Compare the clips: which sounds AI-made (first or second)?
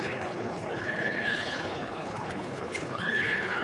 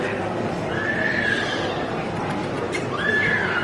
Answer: first